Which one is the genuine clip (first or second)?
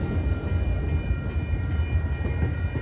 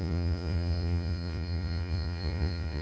first